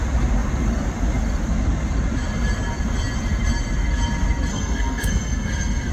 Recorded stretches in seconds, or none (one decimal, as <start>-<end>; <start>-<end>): 0.0-4.5